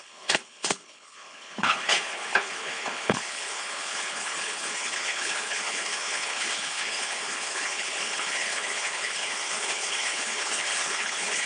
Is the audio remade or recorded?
remade